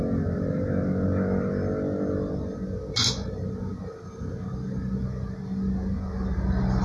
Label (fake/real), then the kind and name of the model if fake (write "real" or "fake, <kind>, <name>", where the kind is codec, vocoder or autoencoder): real